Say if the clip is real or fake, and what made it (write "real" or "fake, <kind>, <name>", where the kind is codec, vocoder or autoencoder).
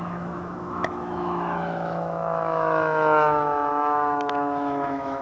fake, autoencoder, DAC-VAE